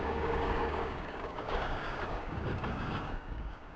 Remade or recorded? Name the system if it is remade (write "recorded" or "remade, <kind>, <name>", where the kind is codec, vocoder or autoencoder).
remade, codec, DAC